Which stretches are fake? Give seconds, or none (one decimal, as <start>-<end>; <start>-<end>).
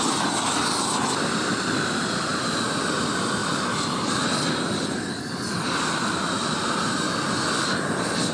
2.3-2.8; 3.4-4.2